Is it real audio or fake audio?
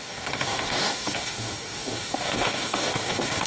fake